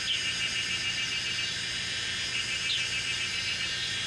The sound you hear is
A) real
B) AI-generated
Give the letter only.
A